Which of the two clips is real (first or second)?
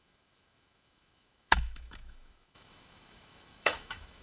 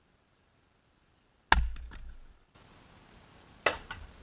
second